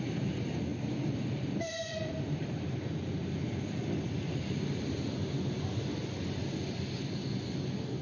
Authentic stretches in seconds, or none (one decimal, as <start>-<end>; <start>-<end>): 0.0-0.7; 4.9-8.0